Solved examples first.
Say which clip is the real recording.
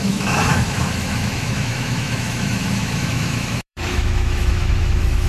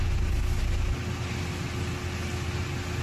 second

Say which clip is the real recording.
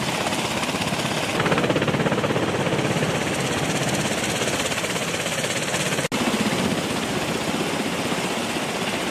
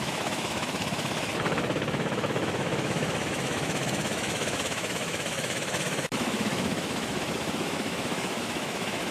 first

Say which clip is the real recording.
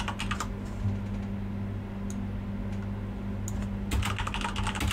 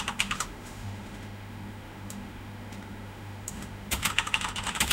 first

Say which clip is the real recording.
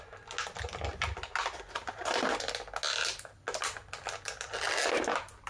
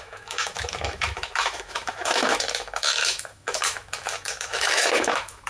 first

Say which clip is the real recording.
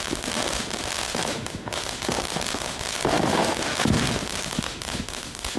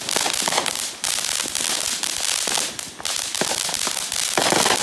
second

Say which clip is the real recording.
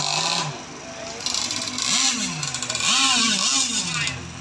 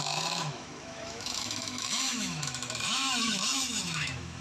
first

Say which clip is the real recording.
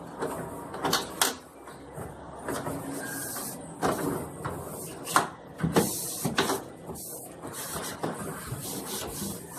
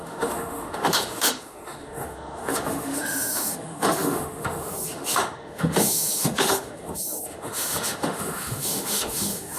first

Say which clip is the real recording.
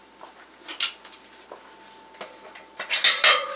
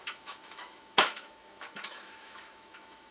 first